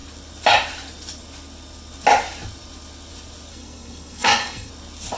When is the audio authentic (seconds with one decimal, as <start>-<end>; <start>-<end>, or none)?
0.0-3.5; 4.7-5.2